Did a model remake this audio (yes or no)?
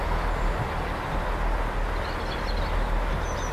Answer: no